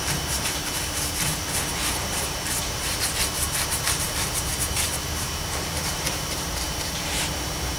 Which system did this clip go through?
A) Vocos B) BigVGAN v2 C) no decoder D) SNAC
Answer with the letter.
B